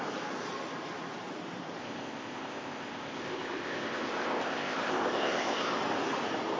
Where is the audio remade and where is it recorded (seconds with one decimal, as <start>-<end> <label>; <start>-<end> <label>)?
0.0-1.8 recorded; 1.8-5.8 remade; 5.8-6.6 recorded